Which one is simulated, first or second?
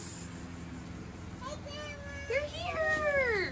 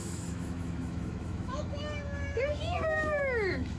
second